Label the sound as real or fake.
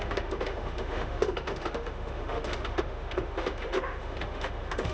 fake